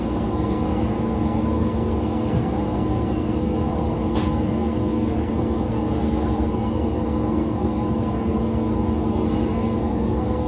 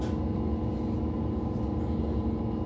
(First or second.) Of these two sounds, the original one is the second